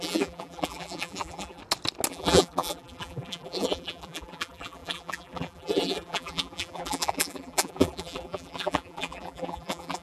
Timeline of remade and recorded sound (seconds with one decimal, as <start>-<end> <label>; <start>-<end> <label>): 0.0-1.6 remade; 1.6-2.1 recorded; 2.1-10.0 remade